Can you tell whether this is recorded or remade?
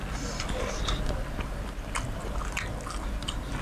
recorded